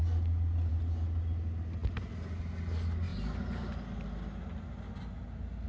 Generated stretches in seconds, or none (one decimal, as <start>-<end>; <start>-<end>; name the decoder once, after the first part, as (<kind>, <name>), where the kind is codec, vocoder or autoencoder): none

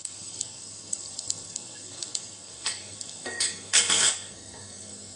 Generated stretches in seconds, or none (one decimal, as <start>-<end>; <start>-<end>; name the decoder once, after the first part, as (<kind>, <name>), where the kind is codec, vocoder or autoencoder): 0.0-5.2 (codec, SNAC)

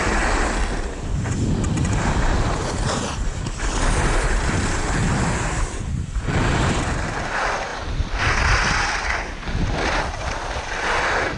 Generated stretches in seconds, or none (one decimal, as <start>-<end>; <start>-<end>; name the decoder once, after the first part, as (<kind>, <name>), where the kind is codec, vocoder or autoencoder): none

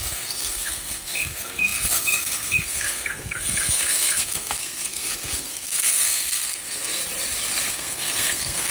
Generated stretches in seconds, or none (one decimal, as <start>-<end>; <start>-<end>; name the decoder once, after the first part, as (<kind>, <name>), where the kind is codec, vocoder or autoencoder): 0.0-7.0 (codec, SNAC); 7.7-8.7

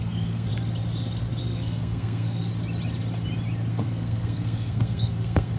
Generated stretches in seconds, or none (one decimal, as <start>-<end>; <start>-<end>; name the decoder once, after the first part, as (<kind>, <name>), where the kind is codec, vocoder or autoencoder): 0.0-0.5 (codec, SNAC); 1.4-2.5; 3.7-5.6

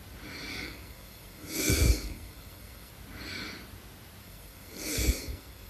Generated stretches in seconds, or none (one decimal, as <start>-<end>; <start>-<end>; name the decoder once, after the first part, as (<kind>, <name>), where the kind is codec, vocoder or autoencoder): 0.5-2.9 (codec, SNAC); 4.2-5.7

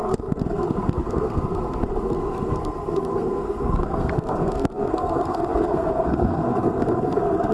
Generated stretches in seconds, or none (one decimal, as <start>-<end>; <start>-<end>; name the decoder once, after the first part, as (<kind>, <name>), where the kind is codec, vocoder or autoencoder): 0.0-7.5 (codec, SNAC)

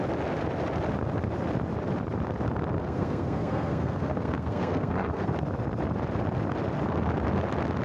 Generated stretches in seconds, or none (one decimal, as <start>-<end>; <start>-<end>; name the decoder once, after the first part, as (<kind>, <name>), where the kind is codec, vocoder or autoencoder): 2.8-5.3 (codec, SNAC)